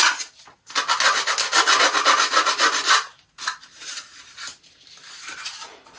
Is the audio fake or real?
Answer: real